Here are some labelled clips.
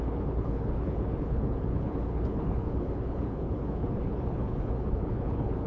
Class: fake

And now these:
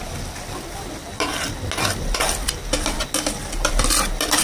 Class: real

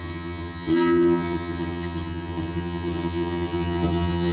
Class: fake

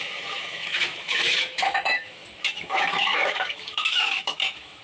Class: fake